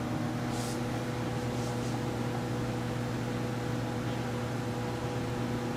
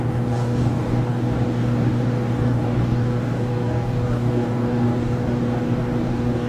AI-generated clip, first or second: second